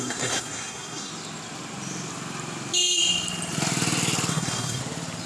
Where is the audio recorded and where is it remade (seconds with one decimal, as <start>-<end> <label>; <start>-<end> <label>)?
0.0-1.1 remade; 1.1-4.3 recorded; 4.3-4.8 remade; 4.8-5.3 recorded